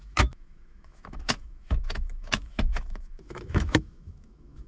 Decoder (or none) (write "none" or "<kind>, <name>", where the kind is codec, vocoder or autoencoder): autoencoder, DAC-VAE